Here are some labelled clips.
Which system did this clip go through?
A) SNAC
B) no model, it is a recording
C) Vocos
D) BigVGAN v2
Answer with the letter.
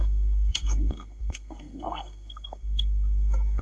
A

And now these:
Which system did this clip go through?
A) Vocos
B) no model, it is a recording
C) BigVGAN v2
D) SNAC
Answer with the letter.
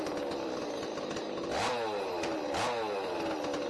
B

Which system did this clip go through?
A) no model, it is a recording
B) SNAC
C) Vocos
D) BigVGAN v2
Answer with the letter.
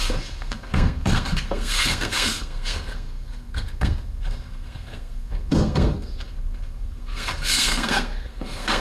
B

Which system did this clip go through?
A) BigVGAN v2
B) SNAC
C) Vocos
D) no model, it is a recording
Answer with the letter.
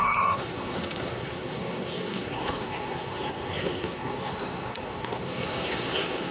B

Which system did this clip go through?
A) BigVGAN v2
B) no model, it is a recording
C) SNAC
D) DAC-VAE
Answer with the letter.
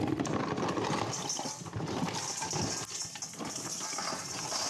B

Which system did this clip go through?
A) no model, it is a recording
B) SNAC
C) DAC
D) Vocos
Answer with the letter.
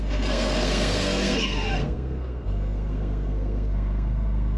B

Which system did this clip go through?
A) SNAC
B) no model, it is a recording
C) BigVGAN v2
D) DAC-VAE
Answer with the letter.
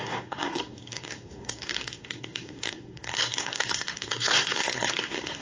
A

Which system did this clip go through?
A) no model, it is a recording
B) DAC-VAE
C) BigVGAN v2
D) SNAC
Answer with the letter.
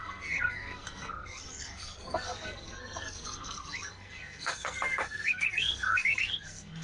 D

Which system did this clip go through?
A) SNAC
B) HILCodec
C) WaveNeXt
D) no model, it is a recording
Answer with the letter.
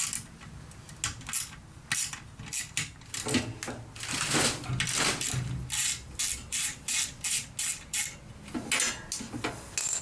D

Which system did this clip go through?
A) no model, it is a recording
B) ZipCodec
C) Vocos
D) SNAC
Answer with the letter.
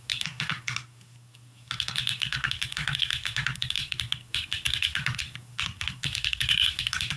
D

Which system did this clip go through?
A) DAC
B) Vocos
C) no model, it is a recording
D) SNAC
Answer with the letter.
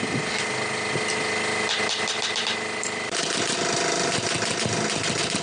C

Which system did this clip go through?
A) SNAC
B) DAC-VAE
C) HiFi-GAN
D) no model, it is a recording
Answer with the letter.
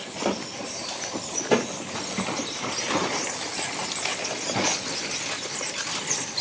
D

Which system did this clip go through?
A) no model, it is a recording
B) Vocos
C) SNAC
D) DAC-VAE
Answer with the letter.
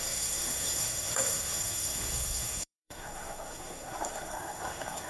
C